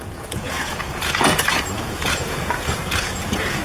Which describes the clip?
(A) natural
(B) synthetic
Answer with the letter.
B